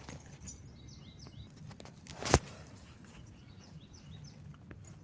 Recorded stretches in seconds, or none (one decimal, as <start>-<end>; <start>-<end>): 0.0-3.0; 4.0-5.0